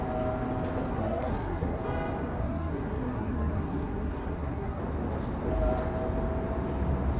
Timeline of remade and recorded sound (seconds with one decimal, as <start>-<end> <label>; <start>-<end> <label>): 0.0-0.9 recorded; 0.9-1.8 remade; 1.8-2.4 recorded; 2.4-4.8 remade; 4.8-7.2 recorded